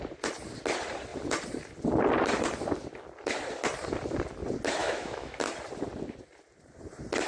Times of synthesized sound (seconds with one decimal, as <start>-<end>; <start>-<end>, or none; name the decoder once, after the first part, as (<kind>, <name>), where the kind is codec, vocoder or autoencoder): 4.8-5.4 (autoencoder, DAC-VAE)